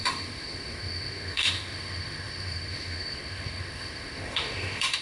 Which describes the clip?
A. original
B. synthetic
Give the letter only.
B